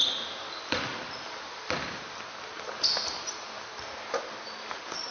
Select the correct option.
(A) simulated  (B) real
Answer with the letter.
B